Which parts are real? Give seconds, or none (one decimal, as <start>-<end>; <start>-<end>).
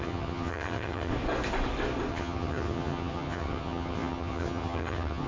1.1-2.1